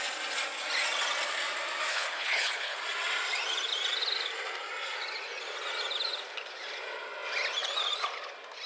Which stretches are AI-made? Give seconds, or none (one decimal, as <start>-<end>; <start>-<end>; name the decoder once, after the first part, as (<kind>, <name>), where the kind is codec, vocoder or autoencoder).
1.9-2.8 (codec, HILCodec)